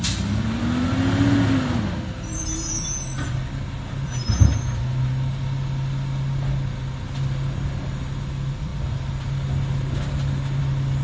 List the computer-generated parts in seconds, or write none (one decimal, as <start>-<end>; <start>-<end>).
none